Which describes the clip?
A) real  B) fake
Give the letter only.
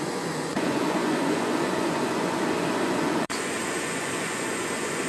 B